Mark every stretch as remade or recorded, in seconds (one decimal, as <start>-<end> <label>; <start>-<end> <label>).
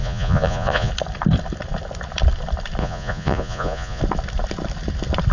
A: 0.0-0.9 remade; 0.9-2.8 recorded; 2.8-4.0 remade; 4.0-5.3 recorded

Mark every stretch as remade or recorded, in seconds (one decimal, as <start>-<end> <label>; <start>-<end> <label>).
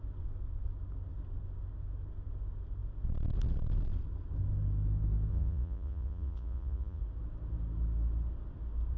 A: 0.0-5.3 recorded; 5.3-7.0 remade; 7.0-9.0 recorded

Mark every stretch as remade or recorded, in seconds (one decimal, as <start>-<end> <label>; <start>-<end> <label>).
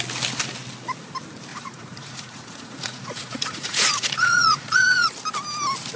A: 0.0-1.5 recorded; 1.5-5.1 remade; 5.1-6.0 recorded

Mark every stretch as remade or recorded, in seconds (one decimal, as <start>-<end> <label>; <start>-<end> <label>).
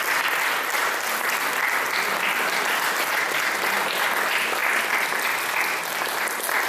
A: 0.0-6.7 recorded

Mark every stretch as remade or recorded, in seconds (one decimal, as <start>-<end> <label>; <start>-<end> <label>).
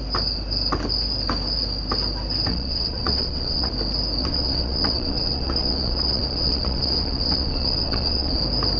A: 0.0-2.5 recorded; 2.5-3.7 remade; 3.7-4.2 recorded; 4.2-8.4 remade; 8.4-8.8 recorded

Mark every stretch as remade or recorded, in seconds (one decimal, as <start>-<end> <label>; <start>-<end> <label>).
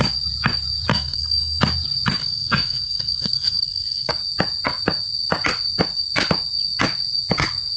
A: 0.0-0.9 recorded; 0.9-1.6 remade; 1.6-2.2 recorded; 2.2-4.1 remade; 4.1-7.8 recorded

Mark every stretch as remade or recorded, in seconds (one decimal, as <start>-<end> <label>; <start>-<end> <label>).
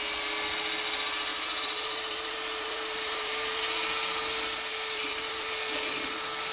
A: 0.0-1.3 recorded; 1.3-3.6 remade; 3.6-4.7 recorded; 4.7-5.5 remade; 5.5-6.5 recorded